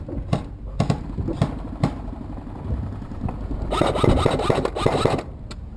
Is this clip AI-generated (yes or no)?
no